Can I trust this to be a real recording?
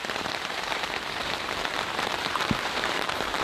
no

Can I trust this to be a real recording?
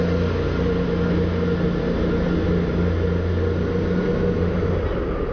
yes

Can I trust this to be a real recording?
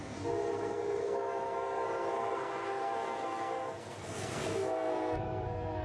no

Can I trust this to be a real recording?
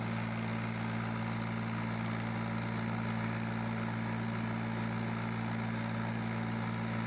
yes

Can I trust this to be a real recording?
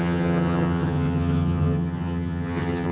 no